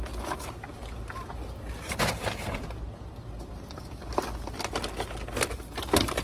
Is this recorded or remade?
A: recorded